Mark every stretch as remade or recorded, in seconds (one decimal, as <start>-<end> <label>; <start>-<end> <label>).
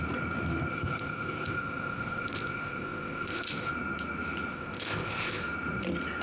0.0-0.7 recorded; 0.7-3.7 remade; 3.7-4.5 recorded; 4.5-5.4 remade; 5.4-6.2 recorded